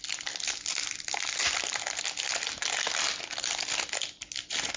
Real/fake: real